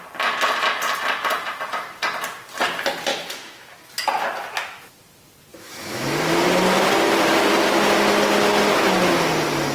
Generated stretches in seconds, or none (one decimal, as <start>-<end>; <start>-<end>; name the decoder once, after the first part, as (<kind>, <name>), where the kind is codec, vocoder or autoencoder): 3.1-3.9 (autoencoder, DAC-VAE); 5.5-6.4